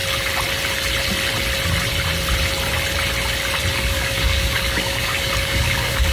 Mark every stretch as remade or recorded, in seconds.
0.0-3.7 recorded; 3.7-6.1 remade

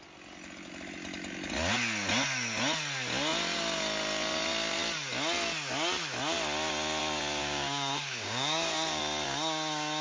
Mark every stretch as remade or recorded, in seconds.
0.0-7.4 recorded; 7.4-9.0 remade; 9.0-10.0 recorded

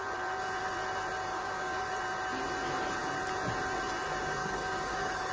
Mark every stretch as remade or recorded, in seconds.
0.0-1.3 recorded; 1.3-1.9 remade; 1.9-4.4 recorded; 4.4-5.3 remade

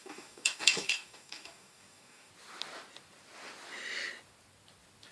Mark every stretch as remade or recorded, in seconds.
0.0-2.3 remade; 2.3-5.1 recorded

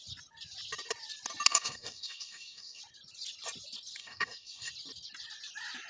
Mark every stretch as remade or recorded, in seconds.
0.0-1.5 recorded; 1.5-2.8 remade; 2.8-4.0 recorded; 4.0-4.7 remade; 4.7-5.9 recorded

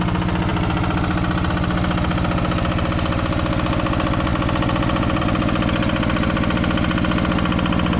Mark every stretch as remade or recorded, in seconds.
0.0-8.0 recorded

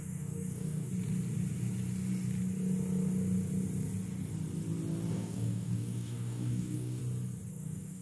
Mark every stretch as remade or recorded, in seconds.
0.0-0.9 remade; 0.9-5.1 recorded; 5.1-7.0 remade; 7.0-7.5 recorded; 7.5-8.0 remade

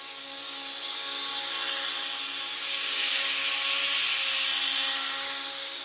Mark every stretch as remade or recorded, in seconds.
0.0-1.3 remade; 1.3-2.5 recorded; 2.5-3.4 remade; 3.4-5.0 recorded; 5.0-5.8 remade